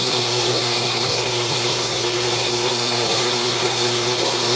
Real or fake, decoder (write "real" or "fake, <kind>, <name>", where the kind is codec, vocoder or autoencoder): fake, codec, SNAC